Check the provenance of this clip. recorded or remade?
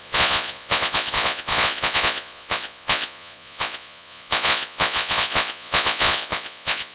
remade